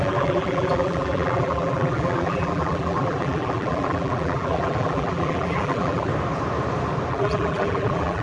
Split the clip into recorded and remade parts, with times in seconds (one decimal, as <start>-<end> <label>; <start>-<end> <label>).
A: 0.0-6.1 remade; 6.1-7.1 recorded; 7.1-8.2 remade